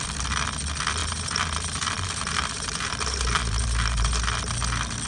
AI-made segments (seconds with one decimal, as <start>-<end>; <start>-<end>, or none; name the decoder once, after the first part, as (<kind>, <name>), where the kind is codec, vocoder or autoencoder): 1.0-4.1 (vocoder, BigVGAN v2)